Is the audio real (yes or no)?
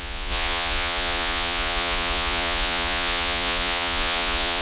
no